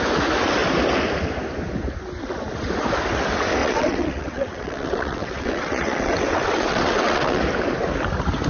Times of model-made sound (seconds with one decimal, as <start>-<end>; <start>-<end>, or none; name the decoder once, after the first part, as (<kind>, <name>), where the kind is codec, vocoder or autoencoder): 3.6-7.4 (vocoder, WaveNeXt)